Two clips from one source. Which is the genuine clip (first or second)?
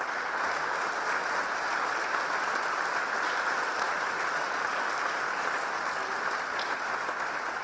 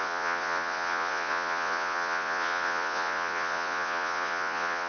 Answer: first